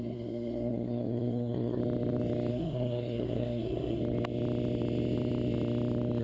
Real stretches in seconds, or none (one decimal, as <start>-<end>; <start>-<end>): 1.8-2.5; 4.0-6.2